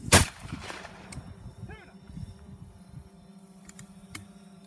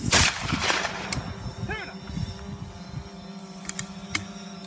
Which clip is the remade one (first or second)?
first